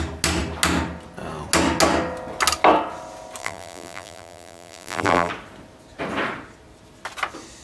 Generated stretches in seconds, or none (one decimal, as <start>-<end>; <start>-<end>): 3.4-5.3